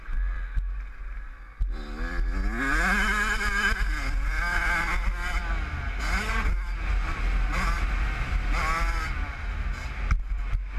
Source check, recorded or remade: recorded